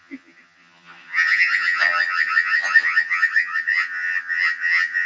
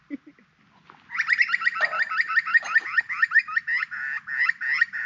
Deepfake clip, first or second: first